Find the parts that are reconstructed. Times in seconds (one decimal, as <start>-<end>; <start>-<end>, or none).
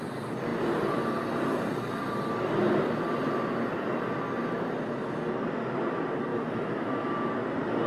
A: 6.3-7.3